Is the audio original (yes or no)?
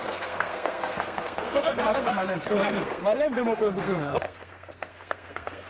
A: no